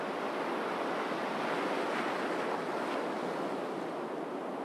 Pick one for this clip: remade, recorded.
recorded